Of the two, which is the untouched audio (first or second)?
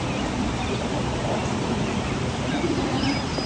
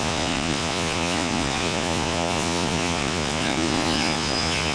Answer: first